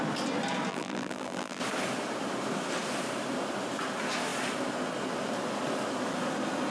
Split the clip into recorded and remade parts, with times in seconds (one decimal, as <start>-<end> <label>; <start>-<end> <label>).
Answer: 0.0-0.7 recorded; 0.7-1.6 remade; 1.6-6.7 recorded